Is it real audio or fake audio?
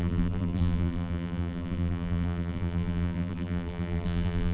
fake